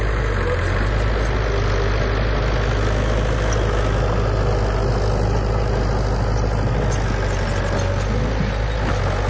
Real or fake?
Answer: real